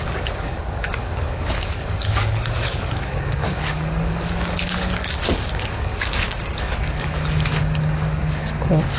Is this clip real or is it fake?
fake